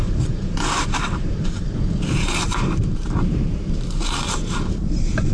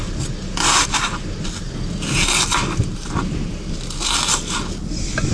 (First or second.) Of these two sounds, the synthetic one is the first